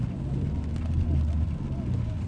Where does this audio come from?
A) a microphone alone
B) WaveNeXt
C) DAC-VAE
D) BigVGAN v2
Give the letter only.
A